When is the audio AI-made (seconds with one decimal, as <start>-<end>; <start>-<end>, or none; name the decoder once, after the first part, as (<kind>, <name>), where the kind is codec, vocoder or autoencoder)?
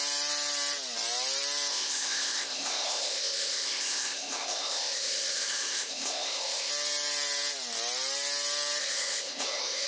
1.7-6.7 (codec, ZipCodec); 8.8-9.9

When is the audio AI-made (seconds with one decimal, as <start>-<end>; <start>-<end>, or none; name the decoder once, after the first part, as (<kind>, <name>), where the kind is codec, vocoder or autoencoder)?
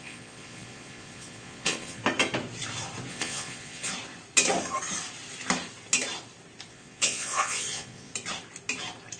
0.0-2.0 (vocoder, Vocos); 3.1-3.9; 6.7-8.1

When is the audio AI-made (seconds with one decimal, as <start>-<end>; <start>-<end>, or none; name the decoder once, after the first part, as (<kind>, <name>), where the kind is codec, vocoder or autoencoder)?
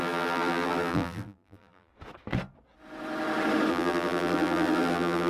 0.0-1.9 (vocoder, BigVGAN v2); 3.7-5.3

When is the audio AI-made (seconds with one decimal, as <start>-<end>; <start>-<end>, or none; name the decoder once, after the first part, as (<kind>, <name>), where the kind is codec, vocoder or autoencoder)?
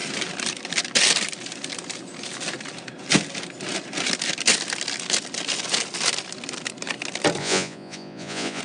7.4-8.6 (vocoder, Vocos)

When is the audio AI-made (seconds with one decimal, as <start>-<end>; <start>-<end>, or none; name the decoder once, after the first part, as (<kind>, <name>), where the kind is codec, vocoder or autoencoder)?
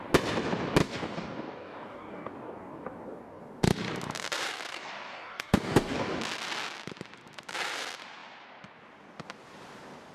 0.8-3.4 (codec, DAC); 4.7-6.2